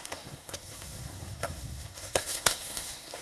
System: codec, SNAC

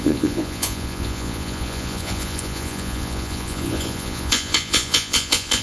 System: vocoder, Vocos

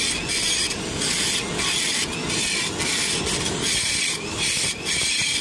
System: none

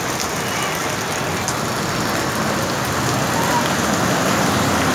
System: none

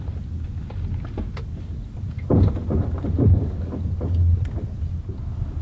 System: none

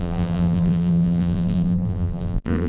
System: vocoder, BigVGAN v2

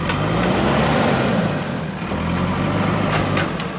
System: none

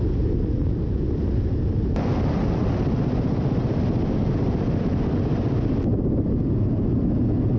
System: none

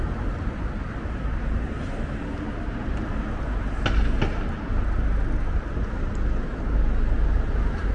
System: none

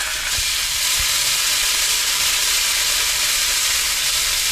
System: vocoder, BigVGAN v2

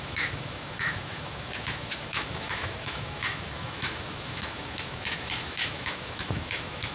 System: autoencoder, DAC-VAE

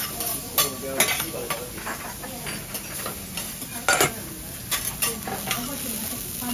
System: none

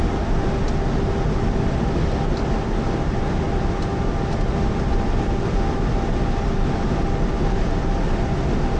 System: none